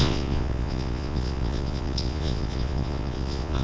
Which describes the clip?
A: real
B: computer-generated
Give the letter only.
B